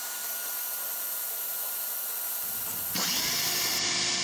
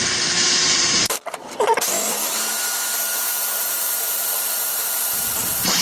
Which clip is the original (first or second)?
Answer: first